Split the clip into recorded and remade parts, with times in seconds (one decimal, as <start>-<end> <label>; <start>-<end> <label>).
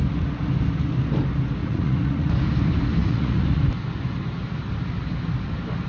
0.0-1.6 recorded; 1.6-2.3 remade; 2.3-3.0 recorded; 3.0-3.6 remade; 3.6-5.9 recorded